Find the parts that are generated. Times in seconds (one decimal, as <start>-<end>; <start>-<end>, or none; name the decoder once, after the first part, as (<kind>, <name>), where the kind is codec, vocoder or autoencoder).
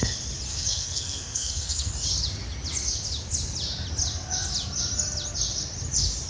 0.5-1.9 (codec, SNAC)